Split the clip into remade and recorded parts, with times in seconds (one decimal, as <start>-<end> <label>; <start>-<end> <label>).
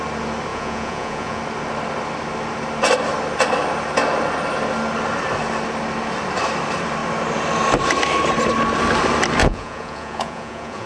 0.0-0.5 recorded; 0.5-1.4 remade; 1.4-9.4 recorded; 9.4-10.9 remade